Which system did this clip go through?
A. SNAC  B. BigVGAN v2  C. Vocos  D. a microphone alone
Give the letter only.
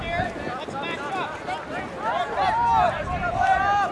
D